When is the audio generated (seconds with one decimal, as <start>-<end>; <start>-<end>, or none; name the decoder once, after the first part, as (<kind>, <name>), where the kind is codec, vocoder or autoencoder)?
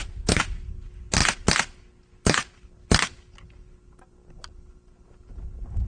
none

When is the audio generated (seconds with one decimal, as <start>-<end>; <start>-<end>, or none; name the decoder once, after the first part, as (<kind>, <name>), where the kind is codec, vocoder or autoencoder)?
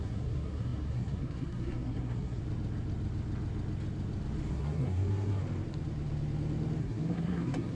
0.0-2.4 (codec, SNAC); 4.5-5.4; 6.8-7.7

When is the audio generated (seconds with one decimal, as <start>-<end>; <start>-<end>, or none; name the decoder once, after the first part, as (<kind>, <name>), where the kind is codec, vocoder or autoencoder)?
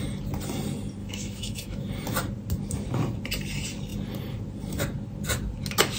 1.0-1.9 (autoencoder, DAC-VAE)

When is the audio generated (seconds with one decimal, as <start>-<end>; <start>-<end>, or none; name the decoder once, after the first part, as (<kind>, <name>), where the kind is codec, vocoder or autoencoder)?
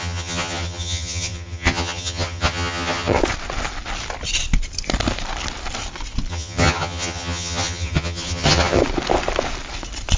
0.0-3.2 (vocoder, HiFi-GAN); 6.3-8.8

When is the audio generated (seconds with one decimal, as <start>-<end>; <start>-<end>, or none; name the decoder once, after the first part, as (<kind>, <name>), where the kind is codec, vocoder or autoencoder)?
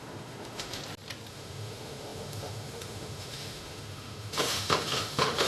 0.0-0.8 (autoencoder, DAC-VAE); 1.3-5.5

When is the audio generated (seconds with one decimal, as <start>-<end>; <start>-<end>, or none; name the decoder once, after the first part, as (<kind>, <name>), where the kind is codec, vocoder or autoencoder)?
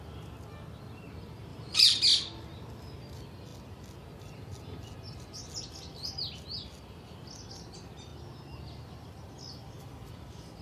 1.5-2.0 (vocoder, BigVGAN v2)